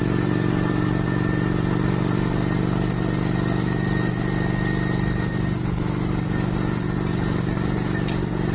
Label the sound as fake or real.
real